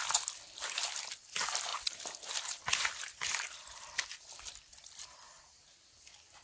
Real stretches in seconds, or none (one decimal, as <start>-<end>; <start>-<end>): 0.0-6.4